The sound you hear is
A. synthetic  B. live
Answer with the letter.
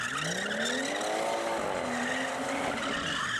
B